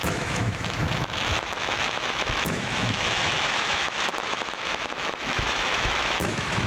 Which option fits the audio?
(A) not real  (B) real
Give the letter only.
A